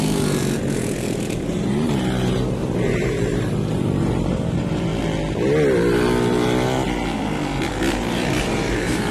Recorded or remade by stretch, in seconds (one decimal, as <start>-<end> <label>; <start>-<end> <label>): 0.0-4.9 remade; 4.9-8.1 recorded; 8.1-9.1 remade